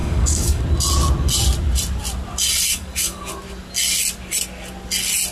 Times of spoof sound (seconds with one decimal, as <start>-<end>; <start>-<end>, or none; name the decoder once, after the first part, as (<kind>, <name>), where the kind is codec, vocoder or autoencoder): 0.0-0.6 (codec, DAC); 2.7-3.3